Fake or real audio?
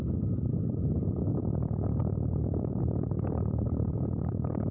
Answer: real